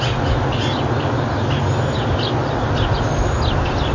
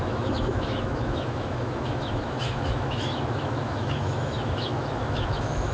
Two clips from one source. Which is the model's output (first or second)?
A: second